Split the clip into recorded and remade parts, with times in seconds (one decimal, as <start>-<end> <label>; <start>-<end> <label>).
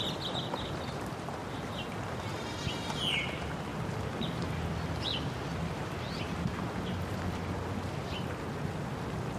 0.0-9.4 recorded